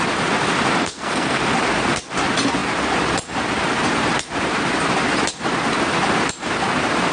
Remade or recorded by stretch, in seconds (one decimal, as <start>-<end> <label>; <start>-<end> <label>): 0.0-0.8 recorded; 0.8-1.4 remade; 1.4-7.1 recorded